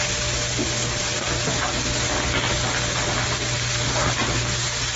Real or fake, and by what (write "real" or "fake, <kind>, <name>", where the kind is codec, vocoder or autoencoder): real